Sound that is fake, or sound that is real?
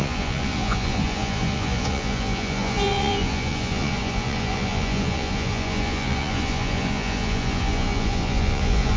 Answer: fake